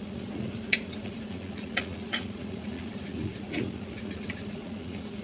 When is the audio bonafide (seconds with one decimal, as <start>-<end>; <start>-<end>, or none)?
none